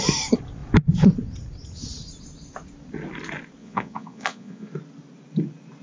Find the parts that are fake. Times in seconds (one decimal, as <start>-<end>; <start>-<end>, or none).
3.6-4.7